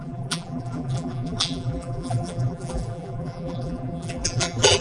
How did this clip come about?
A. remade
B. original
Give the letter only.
A